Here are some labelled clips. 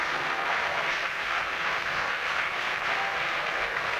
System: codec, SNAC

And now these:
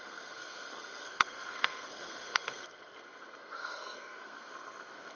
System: codec, SNAC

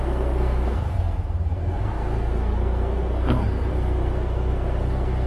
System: codec, SNAC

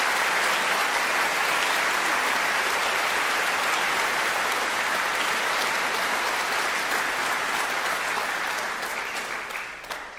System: none